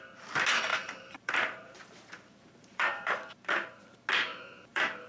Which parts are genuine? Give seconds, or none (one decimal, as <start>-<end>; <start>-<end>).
0.0-0.7; 3.8-4.3